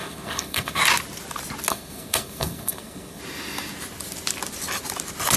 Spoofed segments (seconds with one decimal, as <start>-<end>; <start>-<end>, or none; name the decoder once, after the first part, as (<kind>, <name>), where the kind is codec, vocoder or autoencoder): 0.0-0.8 (codec, SNAC); 1.7-3.2